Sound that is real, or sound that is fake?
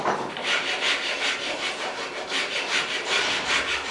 fake